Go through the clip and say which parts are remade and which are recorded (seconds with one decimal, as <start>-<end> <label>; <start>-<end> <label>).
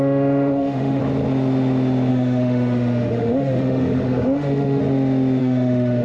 0.0-1.0 remade; 1.0-2.1 recorded; 2.1-4.8 remade; 4.8-5.4 recorded; 5.4-6.0 remade